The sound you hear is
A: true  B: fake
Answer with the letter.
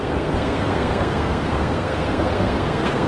B